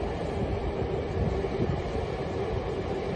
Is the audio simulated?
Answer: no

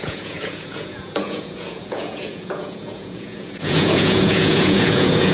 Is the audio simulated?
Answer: yes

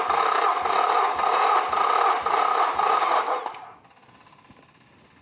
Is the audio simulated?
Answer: no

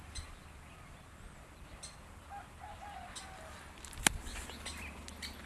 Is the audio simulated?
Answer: no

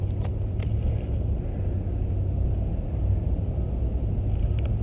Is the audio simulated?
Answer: no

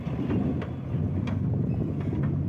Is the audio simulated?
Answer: no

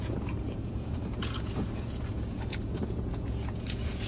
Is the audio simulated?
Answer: yes